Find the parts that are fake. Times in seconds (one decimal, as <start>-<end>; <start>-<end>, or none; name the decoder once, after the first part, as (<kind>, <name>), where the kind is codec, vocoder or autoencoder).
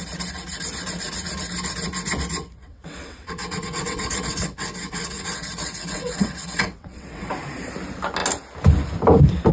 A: 2.6-7.3 (vocoder, WaveNeXt)